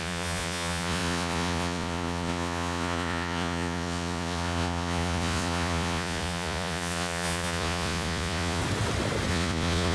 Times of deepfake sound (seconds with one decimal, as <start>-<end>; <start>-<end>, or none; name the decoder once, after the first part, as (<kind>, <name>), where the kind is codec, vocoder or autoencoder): 0.0-8.6 (vocoder, Vocos); 9.3-9.9